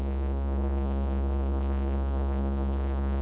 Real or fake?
fake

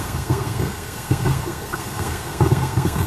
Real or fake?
fake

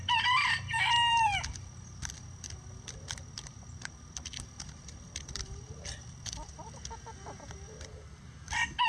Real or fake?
fake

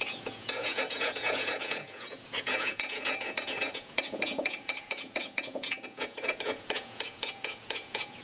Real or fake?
fake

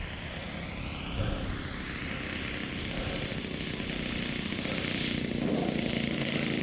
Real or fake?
real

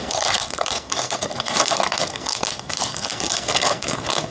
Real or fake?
fake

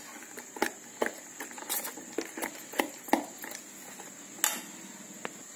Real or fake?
real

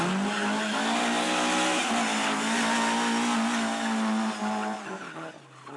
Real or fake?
real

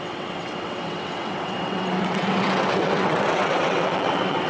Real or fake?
fake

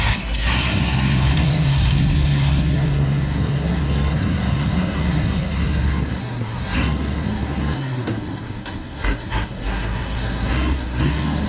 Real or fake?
fake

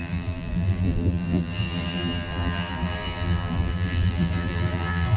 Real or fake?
fake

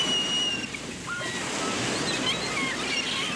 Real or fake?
real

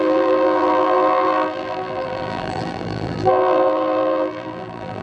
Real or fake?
fake